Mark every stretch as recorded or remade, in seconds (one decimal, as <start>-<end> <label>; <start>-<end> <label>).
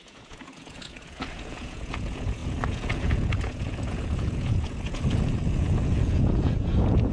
0.0-7.1 remade